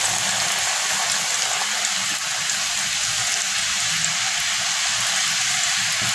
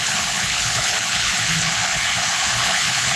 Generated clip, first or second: second